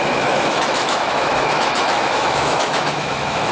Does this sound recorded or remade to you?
remade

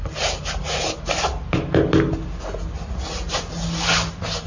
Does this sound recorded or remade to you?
recorded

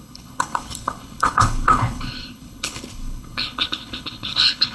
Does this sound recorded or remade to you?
remade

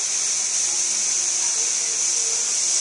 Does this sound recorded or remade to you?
recorded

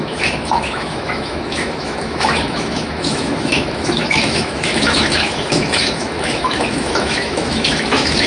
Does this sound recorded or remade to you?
remade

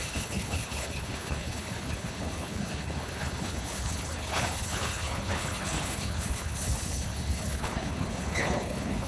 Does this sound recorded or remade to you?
remade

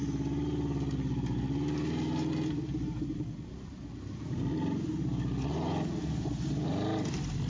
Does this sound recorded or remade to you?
recorded